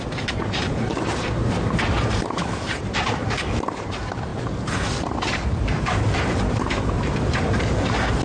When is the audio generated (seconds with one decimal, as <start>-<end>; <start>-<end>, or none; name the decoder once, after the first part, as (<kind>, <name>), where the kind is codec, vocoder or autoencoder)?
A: 0.0-1.4 (vocoder, BigVGAN v2); 1.9-3.2; 3.8-4.3; 5.3-8.2